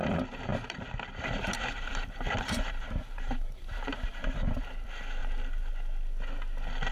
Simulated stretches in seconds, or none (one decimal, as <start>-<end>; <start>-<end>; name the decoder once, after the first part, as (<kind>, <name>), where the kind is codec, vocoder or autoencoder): 0.5-4.6 (vocoder, BigVGAN v2); 5.2-5.7